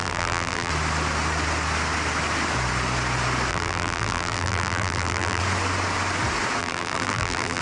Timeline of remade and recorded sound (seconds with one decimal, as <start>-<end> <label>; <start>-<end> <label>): 0.0-0.7 remade; 0.7-3.5 recorded; 3.5-5.4 remade; 5.4-6.6 recorded; 6.6-7.6 remade